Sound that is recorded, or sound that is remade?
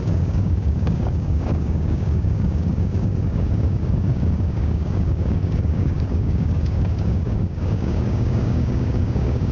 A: remade